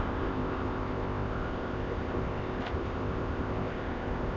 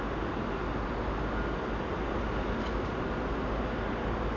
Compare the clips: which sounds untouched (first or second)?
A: second